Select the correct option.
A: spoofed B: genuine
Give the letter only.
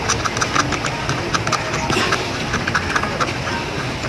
B